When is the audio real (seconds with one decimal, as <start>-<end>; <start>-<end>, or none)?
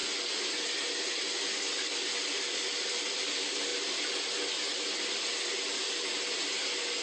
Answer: 0.0-3.0; 3.7-6.2